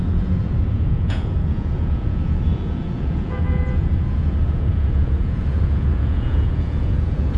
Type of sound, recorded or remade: remade